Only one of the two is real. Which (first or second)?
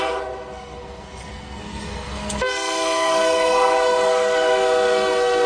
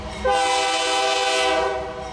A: second